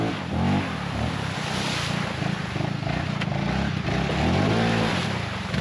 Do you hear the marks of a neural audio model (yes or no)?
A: no